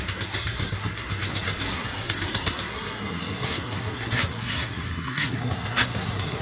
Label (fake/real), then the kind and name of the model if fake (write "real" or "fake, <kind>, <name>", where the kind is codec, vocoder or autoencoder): fake, codec, SNAC